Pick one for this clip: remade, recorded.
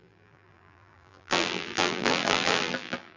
remade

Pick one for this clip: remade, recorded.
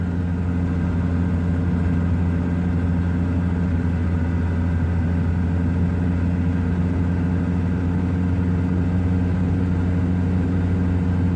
recorded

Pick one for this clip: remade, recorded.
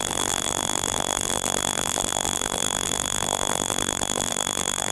remade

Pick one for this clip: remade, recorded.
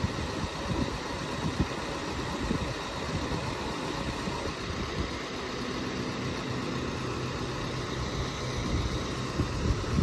recorded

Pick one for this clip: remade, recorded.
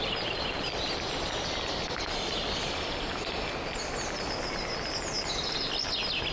recorded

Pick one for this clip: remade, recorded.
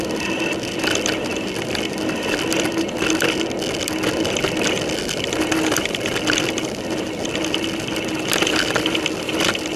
recorded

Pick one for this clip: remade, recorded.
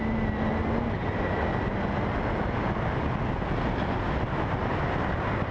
recorded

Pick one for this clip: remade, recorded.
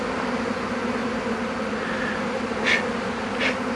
recorded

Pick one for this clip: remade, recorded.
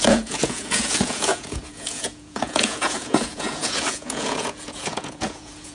remade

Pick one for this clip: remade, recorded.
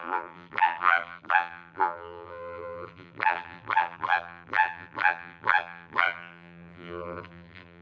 remade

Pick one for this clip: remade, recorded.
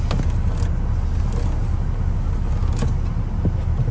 recorded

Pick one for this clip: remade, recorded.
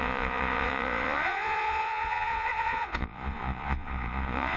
remade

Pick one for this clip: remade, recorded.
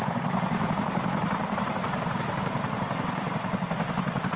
remade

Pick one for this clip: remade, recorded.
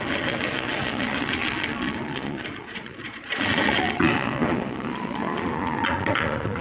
remade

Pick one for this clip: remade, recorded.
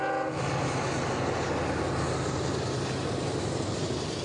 recorded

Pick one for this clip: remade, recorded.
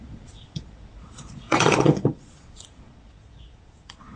remade